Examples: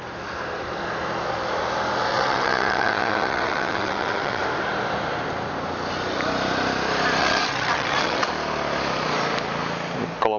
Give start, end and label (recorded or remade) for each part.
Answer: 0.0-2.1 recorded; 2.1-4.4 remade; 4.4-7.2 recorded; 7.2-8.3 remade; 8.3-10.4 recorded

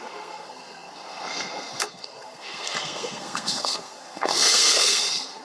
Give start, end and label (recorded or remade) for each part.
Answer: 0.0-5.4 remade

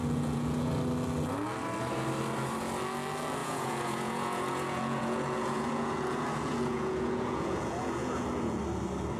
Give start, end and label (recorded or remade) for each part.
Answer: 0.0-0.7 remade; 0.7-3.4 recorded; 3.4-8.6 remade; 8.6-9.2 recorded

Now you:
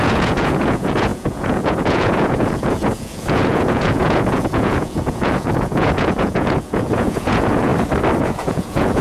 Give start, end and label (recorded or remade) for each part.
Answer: 0.0-7.7 remade; 7.7-8.2 recorded; 8.2-9.0 remade

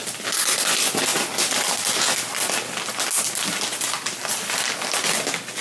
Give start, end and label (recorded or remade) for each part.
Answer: 0.0-5.6 recorded

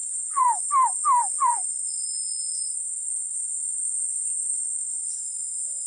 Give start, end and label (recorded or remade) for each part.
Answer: 0.0-5.9 remade

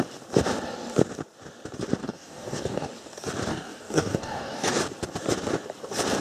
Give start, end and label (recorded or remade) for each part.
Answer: 0.0-2.0 recorded; 2.0-2.9 remade; 2.9-3.5 recorded; 3.5-4.8 remade; 4.8-6.2 recorded

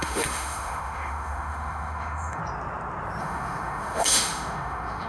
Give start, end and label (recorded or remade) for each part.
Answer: 0.0-2.4 remade; 2.4-3.2 recorded; 3.2-5.1 remade